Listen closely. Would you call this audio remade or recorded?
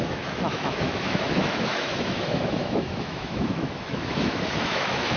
remade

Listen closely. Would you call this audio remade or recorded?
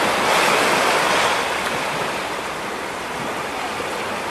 recorded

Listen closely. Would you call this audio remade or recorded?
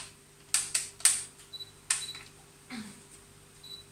recorded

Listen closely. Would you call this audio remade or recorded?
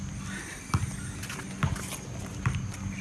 recorded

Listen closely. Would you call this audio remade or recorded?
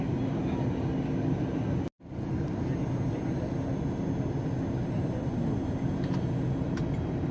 recorded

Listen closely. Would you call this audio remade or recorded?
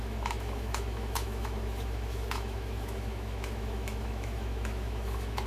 remade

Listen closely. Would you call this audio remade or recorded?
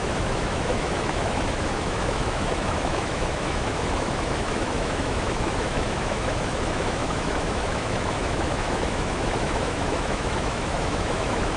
remade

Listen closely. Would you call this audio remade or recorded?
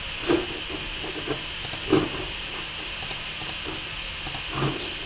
recorded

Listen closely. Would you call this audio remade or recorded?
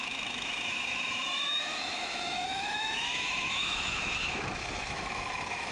remade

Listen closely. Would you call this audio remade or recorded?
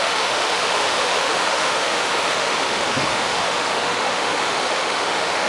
remade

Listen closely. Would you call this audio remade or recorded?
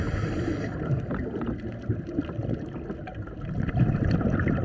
recorded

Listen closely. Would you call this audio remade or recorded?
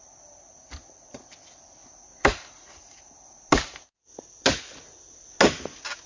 recorded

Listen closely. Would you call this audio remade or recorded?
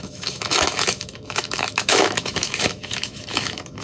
remade